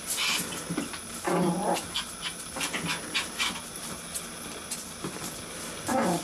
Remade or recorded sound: recorded